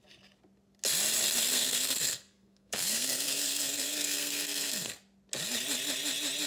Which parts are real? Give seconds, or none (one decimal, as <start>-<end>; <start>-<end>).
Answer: 0.0-1.5; 4.9-6.5